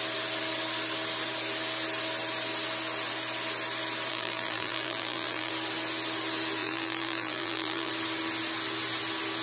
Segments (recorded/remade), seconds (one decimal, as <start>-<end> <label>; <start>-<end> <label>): 0.0-4.1 recorded; 4.1-5.5 remade; 5.5-6.6 recorded; 6.6-7.9 remade; 7.9-9.4 recorded